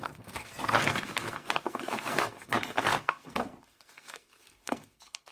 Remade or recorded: remade